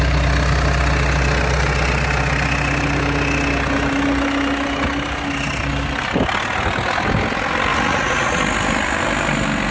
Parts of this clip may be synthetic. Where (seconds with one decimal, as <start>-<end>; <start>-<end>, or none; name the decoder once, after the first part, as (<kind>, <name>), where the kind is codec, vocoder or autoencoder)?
7.7-8.4 (vocoder, Vocos)